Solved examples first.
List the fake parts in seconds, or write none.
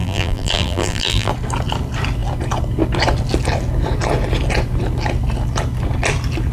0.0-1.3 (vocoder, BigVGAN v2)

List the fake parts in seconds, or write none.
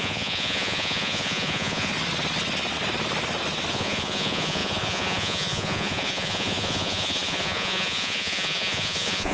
0.0-1.9 (vocoder, Vocos); 3.7-9.3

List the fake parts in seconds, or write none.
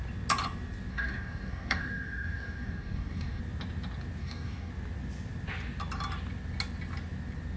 0.9-3.4 (codec, DAC); 4.2-4.7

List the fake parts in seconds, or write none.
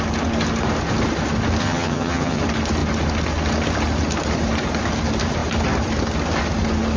1.6-2.4 (vocoder, HiFi-GAN)